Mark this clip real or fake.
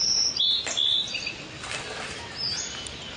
real